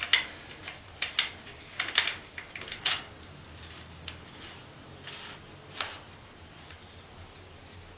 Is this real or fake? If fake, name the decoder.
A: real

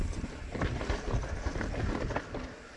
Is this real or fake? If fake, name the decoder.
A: real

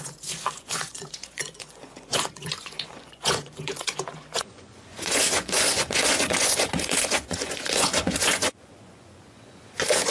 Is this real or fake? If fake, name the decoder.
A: fake, vocoder, Vocos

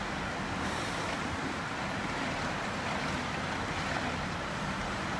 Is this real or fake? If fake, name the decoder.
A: real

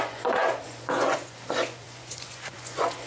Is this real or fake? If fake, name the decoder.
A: fake, vocoder, Vocos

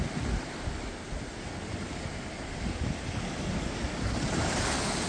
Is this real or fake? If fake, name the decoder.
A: real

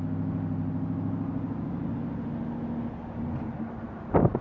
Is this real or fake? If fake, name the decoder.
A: real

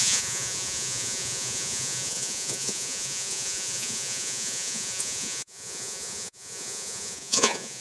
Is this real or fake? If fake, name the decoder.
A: fake, vocoder, Vocos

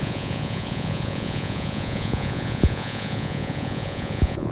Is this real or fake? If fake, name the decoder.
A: fake, vocoder, Vocos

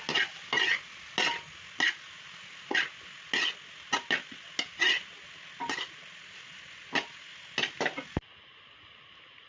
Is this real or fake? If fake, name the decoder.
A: real